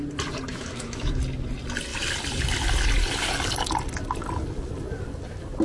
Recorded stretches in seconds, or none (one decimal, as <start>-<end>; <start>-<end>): 0.0-0.5; 1.2-5.6